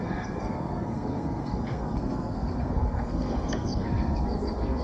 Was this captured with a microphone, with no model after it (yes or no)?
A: no